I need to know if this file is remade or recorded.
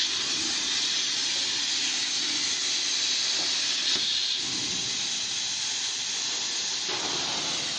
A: recorded